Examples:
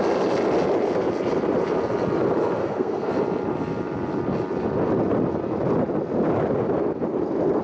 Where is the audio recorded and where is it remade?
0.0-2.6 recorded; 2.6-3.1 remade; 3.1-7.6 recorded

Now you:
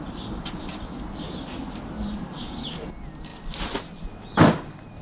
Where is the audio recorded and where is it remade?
0.0-5.0 recorded